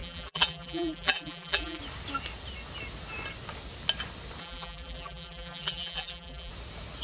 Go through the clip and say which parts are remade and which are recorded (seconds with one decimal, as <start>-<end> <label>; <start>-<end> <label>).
0.0-1.8 remade; 1.8-4.4 recorded; 4.4-6.5 remade; 6.5-7.0 recorded